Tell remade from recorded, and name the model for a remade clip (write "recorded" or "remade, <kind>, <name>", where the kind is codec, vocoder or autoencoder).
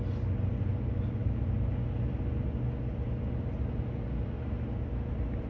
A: recorded